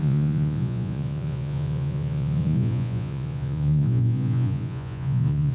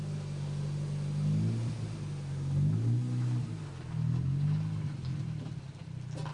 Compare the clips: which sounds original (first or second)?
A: second